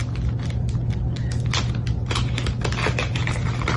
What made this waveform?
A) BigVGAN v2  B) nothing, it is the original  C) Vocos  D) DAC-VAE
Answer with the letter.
B